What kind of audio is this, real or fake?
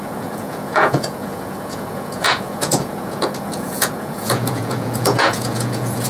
fake